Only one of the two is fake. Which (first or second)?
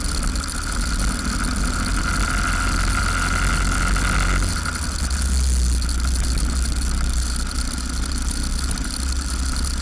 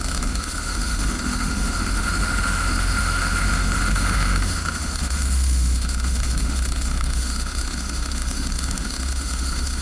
second